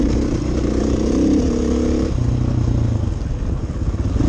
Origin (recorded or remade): recorded